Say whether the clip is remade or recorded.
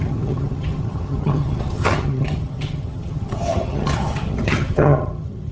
remade